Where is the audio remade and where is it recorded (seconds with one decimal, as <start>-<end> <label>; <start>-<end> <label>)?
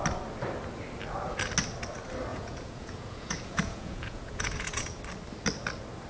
0.0-2.3 recorded; 2.3-5.0 remade; 5.0-6.1 recorded